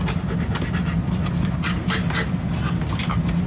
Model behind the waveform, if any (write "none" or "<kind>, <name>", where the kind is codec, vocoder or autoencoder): none